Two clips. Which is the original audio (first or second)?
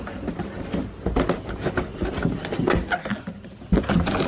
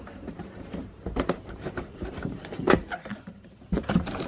first